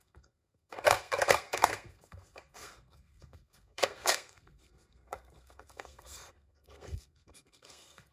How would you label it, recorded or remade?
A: remade